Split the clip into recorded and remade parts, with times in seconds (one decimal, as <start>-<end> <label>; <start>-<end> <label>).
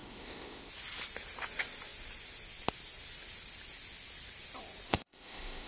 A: 0.0-0.7 remade; 0.7-4.9 recorded; 4.9-5.7 remade